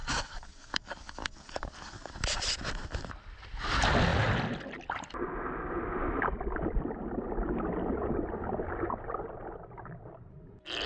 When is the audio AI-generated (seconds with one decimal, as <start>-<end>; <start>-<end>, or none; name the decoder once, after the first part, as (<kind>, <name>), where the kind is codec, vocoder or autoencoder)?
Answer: 0.0-2.1 (codec, DAC)